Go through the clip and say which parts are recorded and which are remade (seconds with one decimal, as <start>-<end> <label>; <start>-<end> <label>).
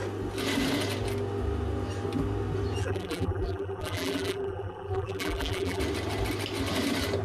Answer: 0.0-2.8 recorded; 2.8-5.8 remade; 5.8-7.2 recorded